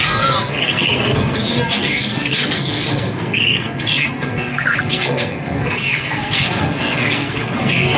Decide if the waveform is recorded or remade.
remade